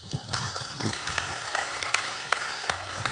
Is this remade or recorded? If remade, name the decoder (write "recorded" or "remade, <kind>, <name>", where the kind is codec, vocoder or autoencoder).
remade, codec, SNAC